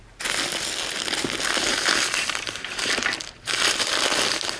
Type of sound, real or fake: real